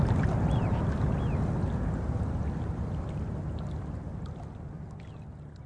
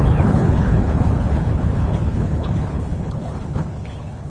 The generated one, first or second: second